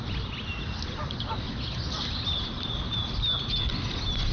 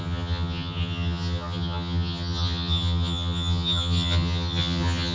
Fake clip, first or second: second